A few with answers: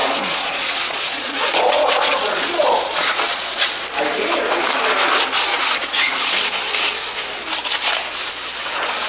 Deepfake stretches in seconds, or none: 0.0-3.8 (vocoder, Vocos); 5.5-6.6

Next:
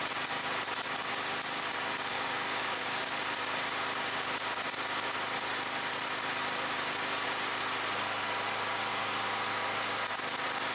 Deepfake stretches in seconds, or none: 2.1-3.0 (codec, DAC)

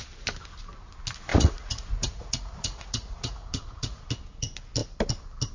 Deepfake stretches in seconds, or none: 1.3-4.0 (vocoder, Vocos)

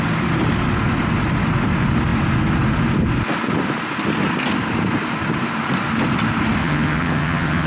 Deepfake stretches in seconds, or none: 6.6-7.7 (vocoder, HiFi-GAN)

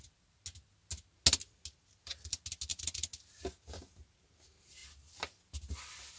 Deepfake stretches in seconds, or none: none